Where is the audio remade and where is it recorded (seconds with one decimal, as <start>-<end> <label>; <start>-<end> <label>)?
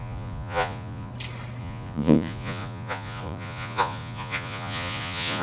0.0-1.1 remade; 1.1-1.6 recorded; 1.6-5.4 remade